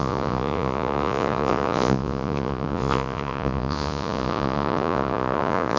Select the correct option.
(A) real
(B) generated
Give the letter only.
B